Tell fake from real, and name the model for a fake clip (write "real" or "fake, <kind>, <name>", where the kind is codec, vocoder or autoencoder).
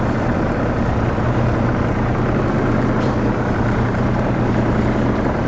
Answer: fake, vocoder, BigVGAN v2